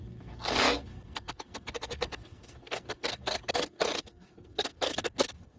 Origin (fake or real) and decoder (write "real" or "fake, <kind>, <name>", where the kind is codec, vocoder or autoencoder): fake, codec, SNAC